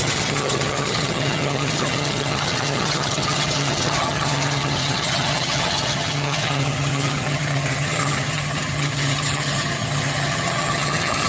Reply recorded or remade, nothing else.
remade